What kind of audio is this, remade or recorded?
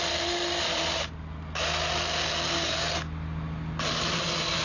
recorded